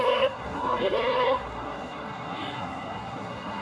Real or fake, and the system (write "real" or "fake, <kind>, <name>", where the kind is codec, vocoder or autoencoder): fake, codec, SNAC